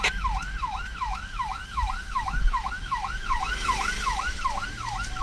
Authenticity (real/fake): fake